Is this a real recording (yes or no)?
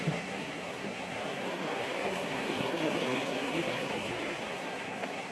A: no